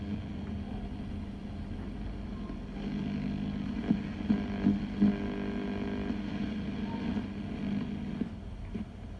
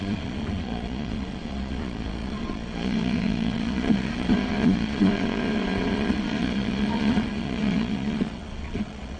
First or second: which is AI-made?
second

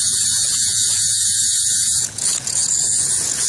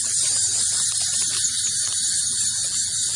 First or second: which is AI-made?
first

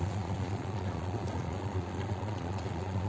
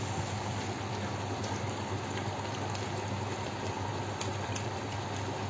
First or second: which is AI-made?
first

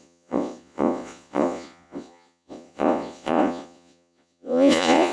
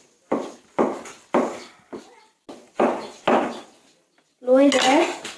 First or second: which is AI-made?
first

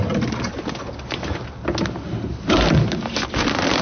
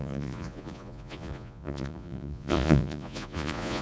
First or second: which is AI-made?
second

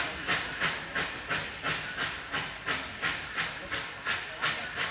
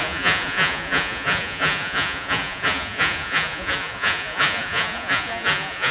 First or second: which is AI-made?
second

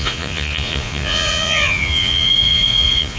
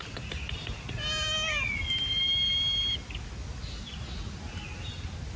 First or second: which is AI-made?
first